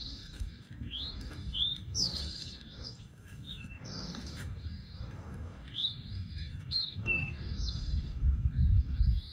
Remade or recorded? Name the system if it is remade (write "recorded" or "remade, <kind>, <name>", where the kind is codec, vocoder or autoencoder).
remade, codec, DAC